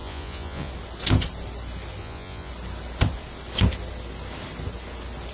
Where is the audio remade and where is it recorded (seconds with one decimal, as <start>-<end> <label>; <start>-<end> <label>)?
0.0-0.7 remade; 0.7-2.0 recorded; 2.0-2.5 remade; 2.5-5.3 recorded